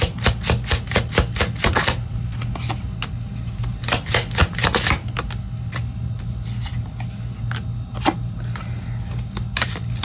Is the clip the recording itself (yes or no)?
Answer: yes